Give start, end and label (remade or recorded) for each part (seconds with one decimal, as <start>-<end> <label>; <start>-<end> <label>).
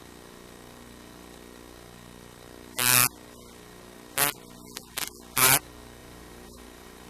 0.0-6.0 recorded; 6.0-7.1 remade